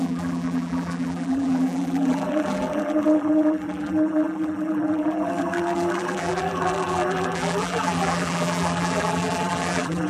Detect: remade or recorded remade